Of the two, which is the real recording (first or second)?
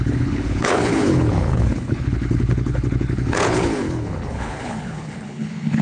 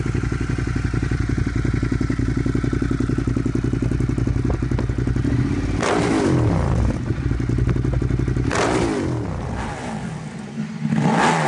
second